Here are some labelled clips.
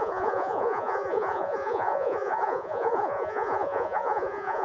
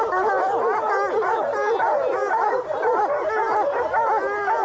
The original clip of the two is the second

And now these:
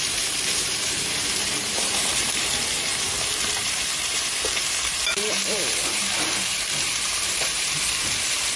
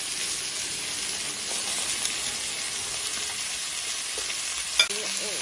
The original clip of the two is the second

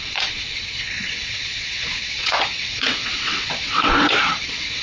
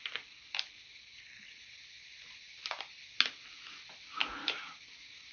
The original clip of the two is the second